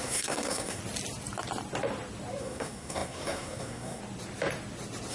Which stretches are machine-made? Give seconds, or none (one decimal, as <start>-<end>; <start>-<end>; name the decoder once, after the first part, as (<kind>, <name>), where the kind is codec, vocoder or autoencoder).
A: 0.0-0.8 (codec, SNAC); 2.4-4.0